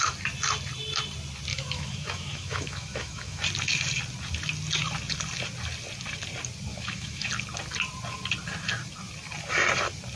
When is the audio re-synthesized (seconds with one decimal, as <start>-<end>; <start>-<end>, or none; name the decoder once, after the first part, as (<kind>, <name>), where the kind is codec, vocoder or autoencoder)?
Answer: 1.5-3.4 (autoencoder, DAC-VAE); 6.7-7.3